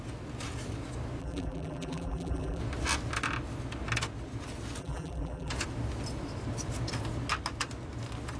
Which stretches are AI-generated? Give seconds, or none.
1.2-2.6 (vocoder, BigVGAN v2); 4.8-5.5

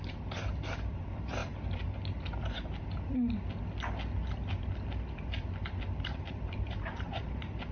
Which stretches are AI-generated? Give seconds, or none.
0.0-1.4 (vocoder, BigVGAN v2); 6.0-7.7

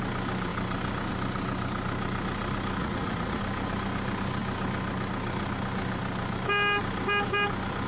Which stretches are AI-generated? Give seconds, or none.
2.8-3.4 (vocoder, Vocos)

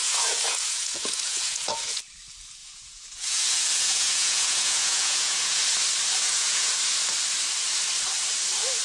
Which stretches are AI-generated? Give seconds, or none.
0.0-2.0 (vocoder, Vocos); 2.6-5.6; 6.2-6.8

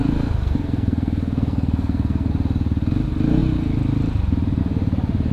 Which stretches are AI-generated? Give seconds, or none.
0.0-2.3 (codec, SNAC)

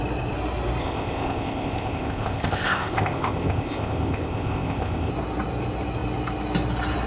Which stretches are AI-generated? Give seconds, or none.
0.8-5.1 (codec, ZipCodec)